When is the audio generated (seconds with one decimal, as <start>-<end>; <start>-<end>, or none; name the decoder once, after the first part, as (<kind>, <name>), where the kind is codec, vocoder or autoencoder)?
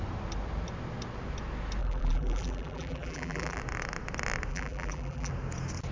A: 1.8-3.6 (vocoder, BigVGAN v2); 4.5-5.3